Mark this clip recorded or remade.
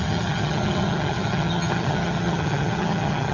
remade